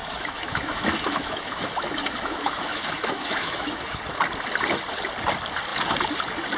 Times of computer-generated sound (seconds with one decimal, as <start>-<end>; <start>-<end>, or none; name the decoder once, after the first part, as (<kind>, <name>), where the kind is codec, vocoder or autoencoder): 0.0-4.0 (autoencoder, DAC-VAE)